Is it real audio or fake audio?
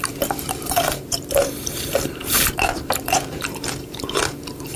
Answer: fake